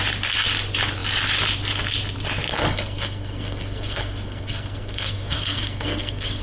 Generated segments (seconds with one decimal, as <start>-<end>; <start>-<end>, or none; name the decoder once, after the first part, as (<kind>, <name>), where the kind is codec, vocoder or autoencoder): 2.5-6.4 (codec, SNAC)

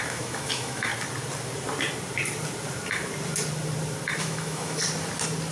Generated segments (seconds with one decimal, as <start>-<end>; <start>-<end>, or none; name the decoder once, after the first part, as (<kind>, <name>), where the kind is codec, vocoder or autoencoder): 0.0-0.9 (autoencoder, DAC-VAE); 4.2-4.8

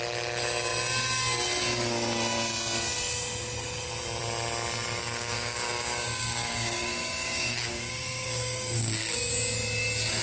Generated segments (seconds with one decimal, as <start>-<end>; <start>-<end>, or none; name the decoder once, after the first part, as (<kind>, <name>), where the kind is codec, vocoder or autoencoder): 5.0-9.3 (codec, DAC)

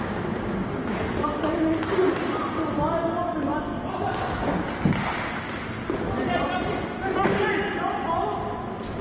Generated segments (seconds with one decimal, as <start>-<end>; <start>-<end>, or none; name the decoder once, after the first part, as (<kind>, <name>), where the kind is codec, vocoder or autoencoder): none

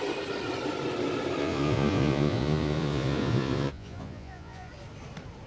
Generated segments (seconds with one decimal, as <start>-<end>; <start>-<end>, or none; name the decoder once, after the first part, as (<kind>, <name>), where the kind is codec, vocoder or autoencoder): 1.4-4.7 (vocoder, Vocos)

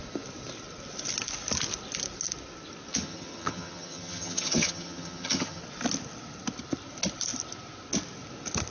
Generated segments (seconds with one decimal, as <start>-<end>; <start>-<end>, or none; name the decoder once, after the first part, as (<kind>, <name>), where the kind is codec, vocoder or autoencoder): 2.9-5.6 (vocoder, HiFi-GAN)

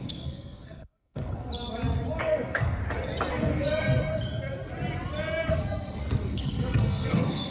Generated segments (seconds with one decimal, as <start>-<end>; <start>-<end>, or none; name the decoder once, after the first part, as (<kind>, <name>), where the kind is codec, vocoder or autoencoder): 0.0-1.5 (codec, SNAC); 2.2-2.8; 3.3-4.1; 5.5-7.5

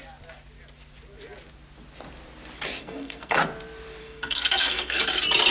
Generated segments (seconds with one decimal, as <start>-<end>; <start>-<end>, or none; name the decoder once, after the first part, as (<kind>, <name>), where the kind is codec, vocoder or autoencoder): 2.8-3.4 (codec, SNAC); 4.0-5.0